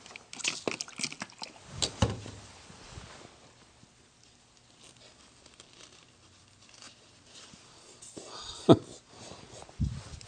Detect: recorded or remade recorded